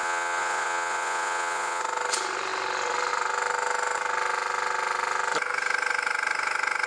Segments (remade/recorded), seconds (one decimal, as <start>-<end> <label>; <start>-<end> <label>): 0.0-1.8 remade; 1.8-6.9 recorded